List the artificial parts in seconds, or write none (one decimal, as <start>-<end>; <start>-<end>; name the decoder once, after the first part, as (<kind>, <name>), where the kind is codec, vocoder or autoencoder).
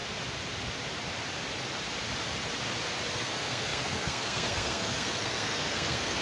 3.1-6.2 (codec, SNAC)